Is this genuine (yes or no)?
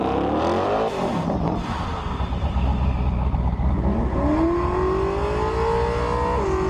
yes